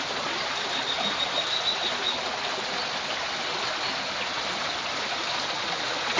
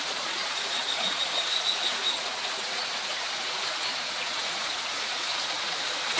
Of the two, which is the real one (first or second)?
first